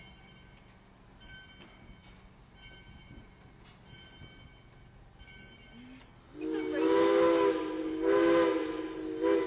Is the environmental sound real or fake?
real